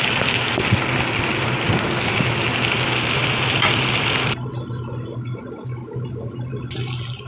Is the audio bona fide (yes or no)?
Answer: yes